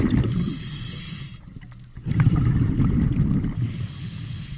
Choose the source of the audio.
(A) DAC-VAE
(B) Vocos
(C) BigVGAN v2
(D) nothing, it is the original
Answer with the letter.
D